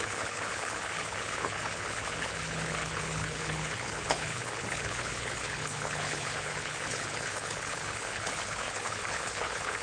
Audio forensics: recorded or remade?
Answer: remade